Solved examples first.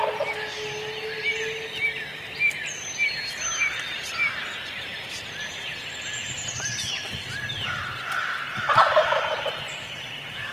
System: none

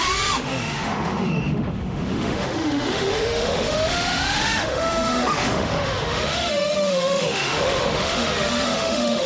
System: autoencoder, DAC-VAE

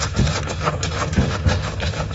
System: autoencoder, DAC-VAE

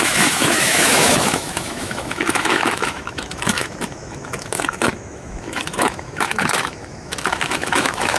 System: autoencoder, DAC-VAE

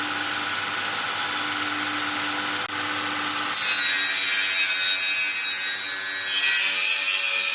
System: none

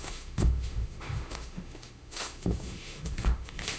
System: autoencoder, DAC-VAE